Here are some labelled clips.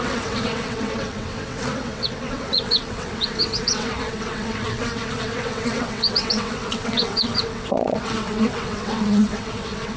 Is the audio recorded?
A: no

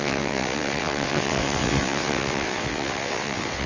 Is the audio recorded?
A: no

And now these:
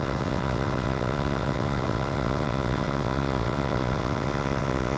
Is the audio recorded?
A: no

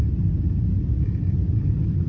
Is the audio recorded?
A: yes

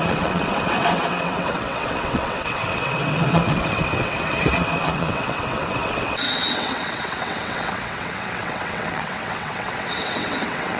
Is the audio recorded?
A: no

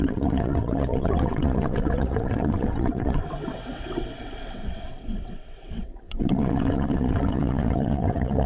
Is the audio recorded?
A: no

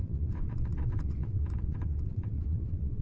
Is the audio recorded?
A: no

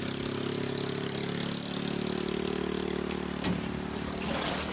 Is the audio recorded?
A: yes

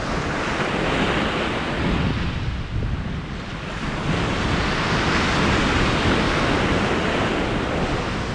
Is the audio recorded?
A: yes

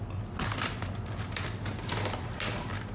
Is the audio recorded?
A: yes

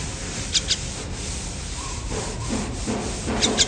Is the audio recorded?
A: yes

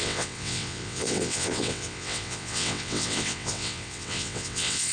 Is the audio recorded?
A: no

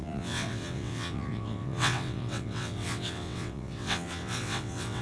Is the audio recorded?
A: no